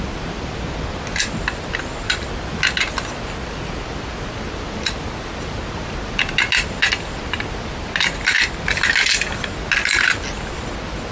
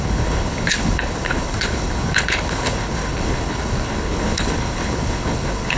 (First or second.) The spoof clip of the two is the second